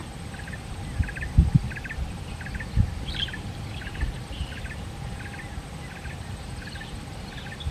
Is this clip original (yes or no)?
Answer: yes